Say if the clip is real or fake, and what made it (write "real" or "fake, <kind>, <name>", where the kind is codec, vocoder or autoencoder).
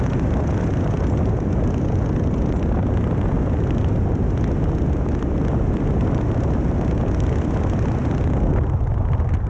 real